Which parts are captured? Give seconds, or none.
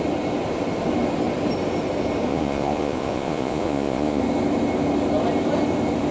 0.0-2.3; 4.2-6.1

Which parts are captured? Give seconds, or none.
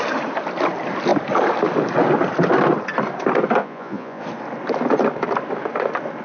0.0-3.6; 4.2-6.2